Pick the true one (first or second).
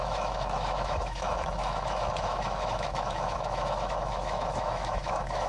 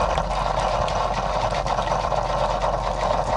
second